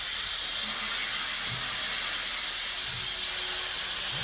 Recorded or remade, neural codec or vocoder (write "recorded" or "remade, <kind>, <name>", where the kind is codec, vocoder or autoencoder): recorded